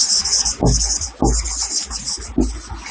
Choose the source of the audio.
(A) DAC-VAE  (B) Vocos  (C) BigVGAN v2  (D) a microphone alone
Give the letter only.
D